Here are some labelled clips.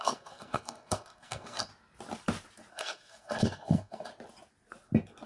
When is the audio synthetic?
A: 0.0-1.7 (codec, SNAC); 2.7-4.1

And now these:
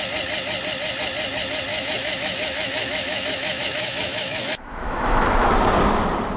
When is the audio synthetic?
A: 1.7-5.5 (autoencoder, DAC-VAE)

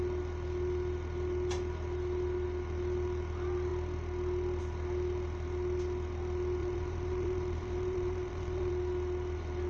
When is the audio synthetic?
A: 6.6-8.7 (vocoder, BigVGAN v2)

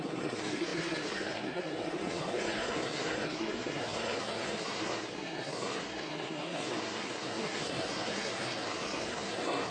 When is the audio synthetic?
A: 0.0-9.7 (codec, SNAC)

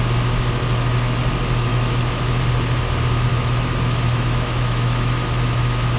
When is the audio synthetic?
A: 1.7-2.4 (autoencoder, DAC-VAE); 3.3-6.0

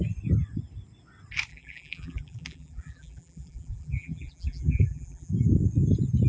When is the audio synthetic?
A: 1.5-5.3 (vocoder, BigVGAN v2)